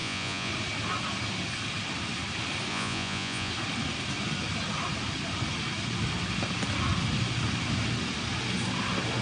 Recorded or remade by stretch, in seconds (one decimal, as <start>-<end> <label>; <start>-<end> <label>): 0.0-0.5 remade; 0.5-2.7 recorded; 2.7-3.5 remade; 3.5-9.2 recorded